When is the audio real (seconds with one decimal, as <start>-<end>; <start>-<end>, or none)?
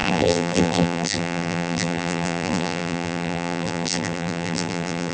none